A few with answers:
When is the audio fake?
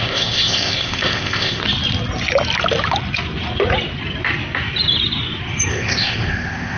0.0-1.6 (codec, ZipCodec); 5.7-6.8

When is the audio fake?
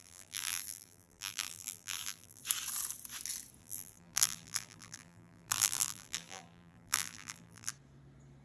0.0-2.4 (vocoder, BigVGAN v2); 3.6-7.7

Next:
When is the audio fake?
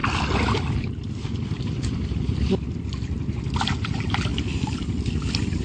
none